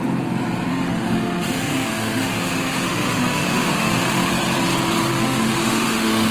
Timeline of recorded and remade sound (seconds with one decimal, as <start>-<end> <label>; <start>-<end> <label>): 0.0-0.7 recorded; 0.7-4.3 remade; 4.3-5.1 recorded; 5.1-6.3 remade